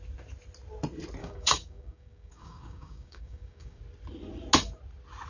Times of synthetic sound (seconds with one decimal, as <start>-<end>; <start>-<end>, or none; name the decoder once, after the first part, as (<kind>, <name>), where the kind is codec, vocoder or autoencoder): 1.2-3.8 (codec, DAC)